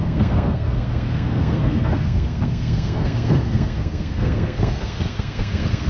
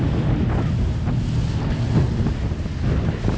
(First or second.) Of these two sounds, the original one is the second